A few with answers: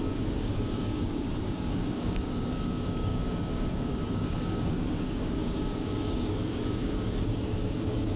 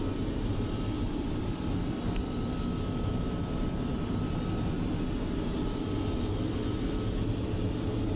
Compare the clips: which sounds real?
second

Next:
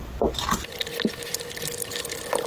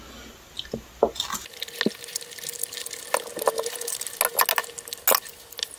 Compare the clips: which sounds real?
second